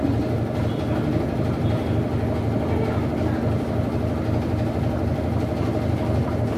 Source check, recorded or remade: recorded